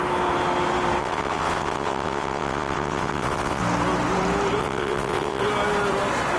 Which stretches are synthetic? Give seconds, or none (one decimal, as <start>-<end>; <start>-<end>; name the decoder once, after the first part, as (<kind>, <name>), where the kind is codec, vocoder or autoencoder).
1.0-3.6 (vocoder, WaveNeXt); 4.6-5.4